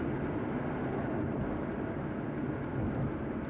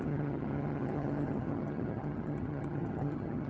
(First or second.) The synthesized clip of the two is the second